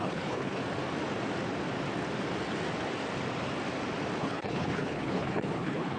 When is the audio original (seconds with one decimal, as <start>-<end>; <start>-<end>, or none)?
0.6-4.2

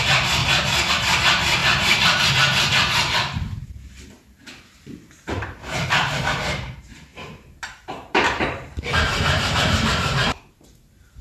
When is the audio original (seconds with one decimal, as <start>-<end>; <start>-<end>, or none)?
0.4-0.9